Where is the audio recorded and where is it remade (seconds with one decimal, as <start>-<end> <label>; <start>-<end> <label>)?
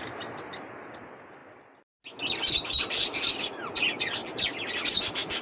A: 0.0-5.4 recorded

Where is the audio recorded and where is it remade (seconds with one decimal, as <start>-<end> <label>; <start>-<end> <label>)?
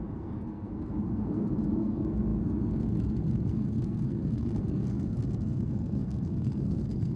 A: 0.0-7.2 remade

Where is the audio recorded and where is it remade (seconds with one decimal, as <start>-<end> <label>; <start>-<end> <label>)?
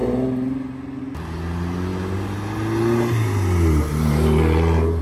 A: 0.0-5.0 recorded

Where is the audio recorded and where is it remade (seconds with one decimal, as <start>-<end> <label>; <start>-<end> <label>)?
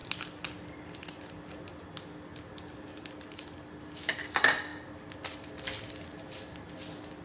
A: 0.0-7.2 recorded